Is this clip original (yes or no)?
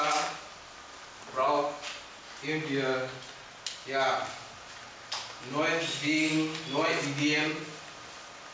yes